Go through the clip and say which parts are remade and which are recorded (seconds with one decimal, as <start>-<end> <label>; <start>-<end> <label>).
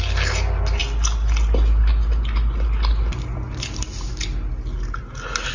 0.0-5.5 recorded